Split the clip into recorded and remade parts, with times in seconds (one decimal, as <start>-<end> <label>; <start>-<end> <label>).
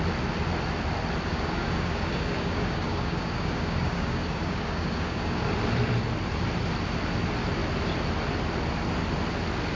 0.0-1.3 recorded; 1.3-5.4 remade; 5.4-9.8 recorded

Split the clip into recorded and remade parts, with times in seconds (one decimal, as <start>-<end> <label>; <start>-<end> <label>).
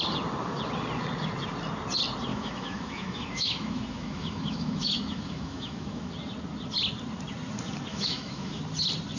0.0-2.3 recorded; 2.3-6.1 remade; 6.1-7.9 recorded; 7.9-8.6 remade; 8.6-9.2 recorded